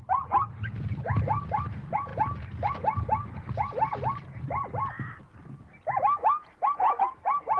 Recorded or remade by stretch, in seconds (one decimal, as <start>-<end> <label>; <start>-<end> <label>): 0.0-7.6 recorded

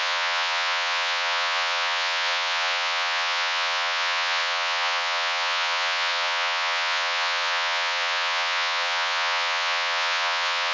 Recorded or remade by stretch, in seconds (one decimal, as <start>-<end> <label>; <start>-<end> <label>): 0.0-10.7 remade

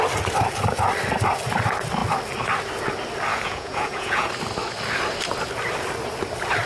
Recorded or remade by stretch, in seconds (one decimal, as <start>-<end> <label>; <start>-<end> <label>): 0.0-3.3 recorded; 3.3-4.3 remade; 4.3-6.7 recorded